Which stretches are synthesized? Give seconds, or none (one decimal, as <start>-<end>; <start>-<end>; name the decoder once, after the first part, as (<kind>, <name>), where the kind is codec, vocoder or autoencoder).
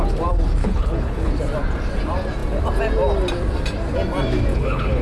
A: 0.6-1.3 (codec, HILCodec); 4.5-5.0